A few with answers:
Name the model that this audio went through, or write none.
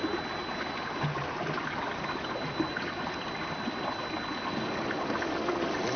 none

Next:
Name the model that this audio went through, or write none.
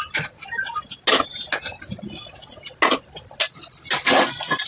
none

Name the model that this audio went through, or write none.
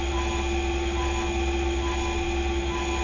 none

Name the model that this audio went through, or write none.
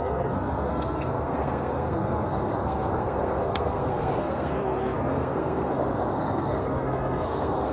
codec, SNAC